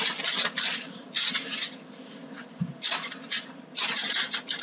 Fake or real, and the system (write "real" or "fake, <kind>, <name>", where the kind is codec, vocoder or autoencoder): real